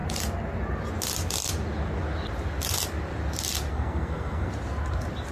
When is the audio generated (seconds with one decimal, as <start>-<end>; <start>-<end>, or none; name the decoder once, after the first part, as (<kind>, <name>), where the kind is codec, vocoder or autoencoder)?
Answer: 3.7-4.5 (codec, SNAC)